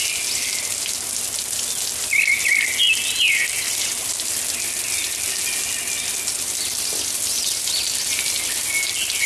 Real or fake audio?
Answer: real